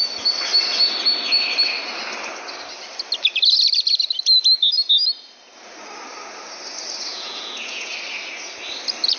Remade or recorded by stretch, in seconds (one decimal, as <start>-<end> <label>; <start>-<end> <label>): 0.0-7.1 recorded; 7.1-7.9 remade; 7.9-9.2 recorded